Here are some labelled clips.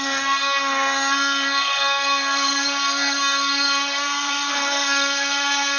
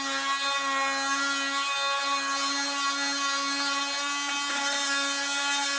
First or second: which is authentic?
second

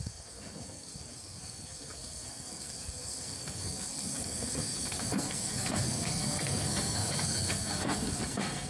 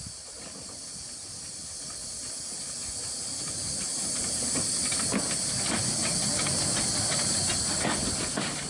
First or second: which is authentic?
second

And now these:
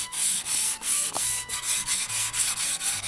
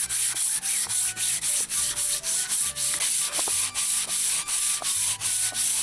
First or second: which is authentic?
second